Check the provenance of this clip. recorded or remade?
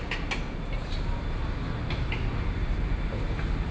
recorded